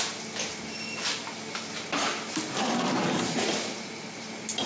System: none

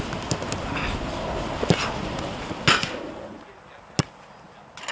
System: none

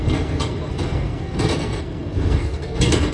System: codec, SNAC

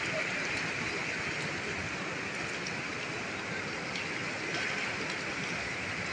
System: none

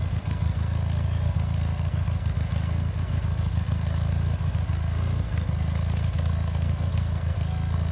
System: codec, SNAC